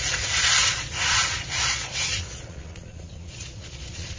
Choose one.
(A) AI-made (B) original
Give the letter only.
A